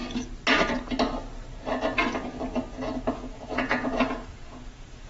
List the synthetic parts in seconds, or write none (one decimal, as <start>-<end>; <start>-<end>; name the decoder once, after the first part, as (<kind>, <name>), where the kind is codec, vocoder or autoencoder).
3.1-5.1 (vocoder, Vocos)